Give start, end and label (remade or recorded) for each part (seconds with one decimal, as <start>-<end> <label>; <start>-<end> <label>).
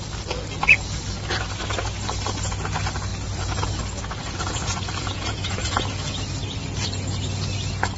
0.0-4.2 recorded; 4.2-5.9 remade; 5.9-8.0 recorded